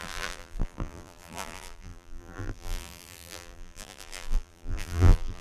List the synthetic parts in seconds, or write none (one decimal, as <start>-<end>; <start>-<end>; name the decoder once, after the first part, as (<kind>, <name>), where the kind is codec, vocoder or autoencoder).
0.0-5.4 (vocoder, BigVGAN v2)